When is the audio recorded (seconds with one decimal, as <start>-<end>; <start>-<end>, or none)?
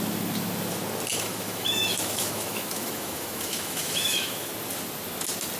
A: 0.0-1.1; 4.5-5.6